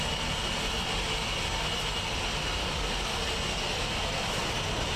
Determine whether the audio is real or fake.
real